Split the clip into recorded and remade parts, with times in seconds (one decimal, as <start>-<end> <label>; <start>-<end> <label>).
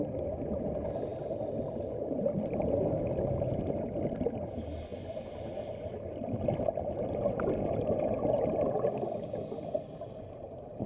0.0-10.9 recorded